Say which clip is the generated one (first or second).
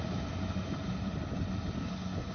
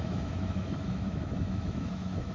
second